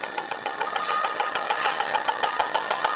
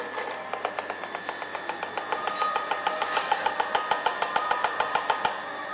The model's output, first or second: first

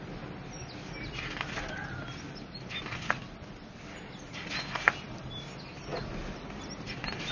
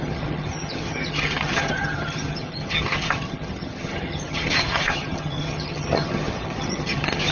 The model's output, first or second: second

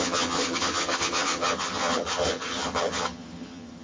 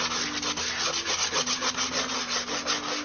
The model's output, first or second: first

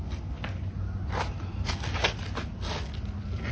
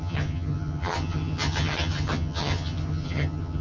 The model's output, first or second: second